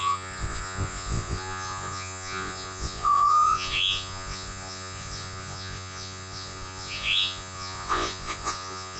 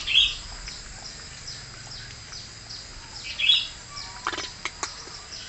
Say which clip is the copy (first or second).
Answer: first